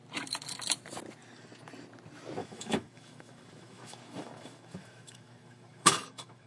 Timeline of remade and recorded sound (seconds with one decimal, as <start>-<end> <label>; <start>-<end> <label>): 0.0-2.4 recorded; 2.4-6.5 remade